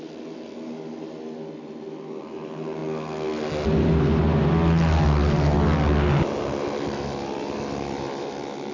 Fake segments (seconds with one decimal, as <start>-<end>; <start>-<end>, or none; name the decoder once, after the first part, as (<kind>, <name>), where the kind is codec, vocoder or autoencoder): none